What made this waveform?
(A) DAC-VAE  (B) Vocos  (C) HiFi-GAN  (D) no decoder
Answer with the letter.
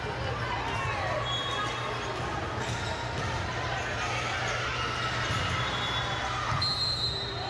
D